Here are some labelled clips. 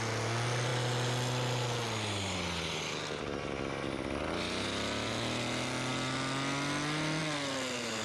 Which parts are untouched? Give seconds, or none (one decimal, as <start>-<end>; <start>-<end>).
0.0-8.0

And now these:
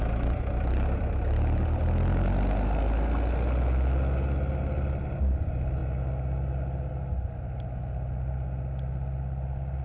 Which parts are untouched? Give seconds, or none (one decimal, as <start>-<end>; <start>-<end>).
0.0-9.8

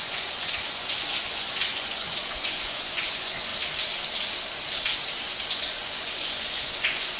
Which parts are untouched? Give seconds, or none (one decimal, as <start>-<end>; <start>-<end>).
3.5-5.2

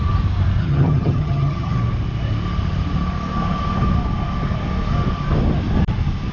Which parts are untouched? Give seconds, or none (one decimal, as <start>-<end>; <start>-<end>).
0.0-0.6; 1.8-6.3

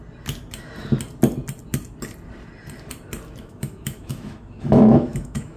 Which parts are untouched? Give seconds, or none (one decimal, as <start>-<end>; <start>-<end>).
0.0-3.4

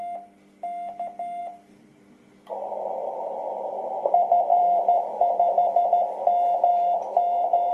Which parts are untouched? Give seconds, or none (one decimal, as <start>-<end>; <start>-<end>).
0.0-1.4; 1.9-2.6; 3.4-4.5; 5.9-6.7

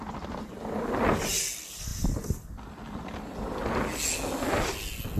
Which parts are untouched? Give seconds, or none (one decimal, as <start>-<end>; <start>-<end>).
0.0-5.2

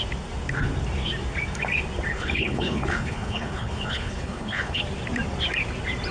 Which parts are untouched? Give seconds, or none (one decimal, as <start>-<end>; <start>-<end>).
0.0-2.1; 4.8-6.1